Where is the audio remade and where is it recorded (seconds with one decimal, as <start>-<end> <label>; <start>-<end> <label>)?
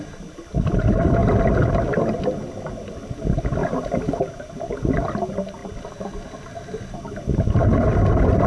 0.0-8.5 recorded